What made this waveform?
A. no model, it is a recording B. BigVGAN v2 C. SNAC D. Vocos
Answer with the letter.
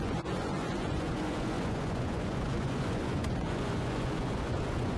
D